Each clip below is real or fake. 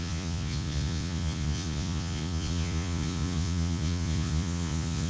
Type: fake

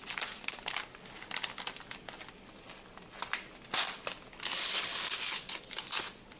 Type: real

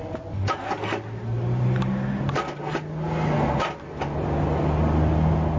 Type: real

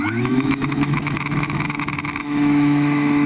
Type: fake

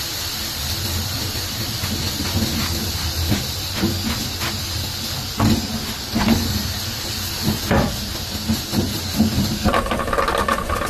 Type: fake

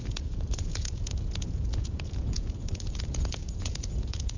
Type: fake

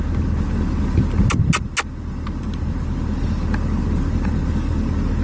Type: real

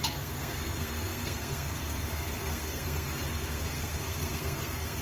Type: fake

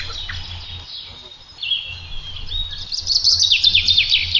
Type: real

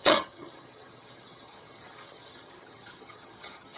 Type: fake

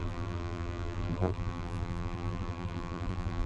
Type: fake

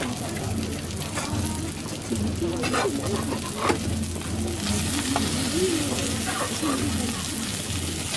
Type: real